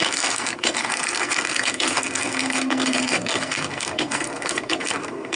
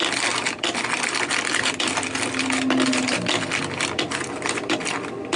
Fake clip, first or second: first